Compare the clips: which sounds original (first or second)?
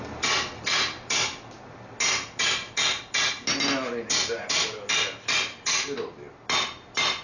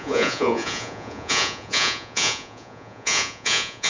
first